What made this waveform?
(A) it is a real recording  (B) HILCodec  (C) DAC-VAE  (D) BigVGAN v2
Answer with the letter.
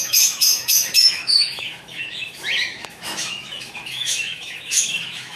C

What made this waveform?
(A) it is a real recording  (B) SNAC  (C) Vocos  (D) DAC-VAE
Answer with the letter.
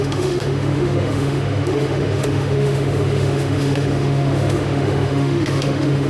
D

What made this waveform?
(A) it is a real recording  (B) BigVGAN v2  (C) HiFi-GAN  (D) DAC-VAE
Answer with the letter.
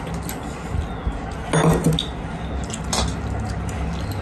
A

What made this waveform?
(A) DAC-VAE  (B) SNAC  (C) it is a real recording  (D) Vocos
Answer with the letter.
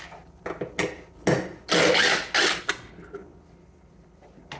C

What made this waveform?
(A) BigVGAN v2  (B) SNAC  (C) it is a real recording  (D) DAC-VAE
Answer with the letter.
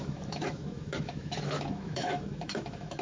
D